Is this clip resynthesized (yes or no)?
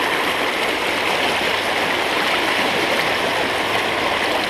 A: no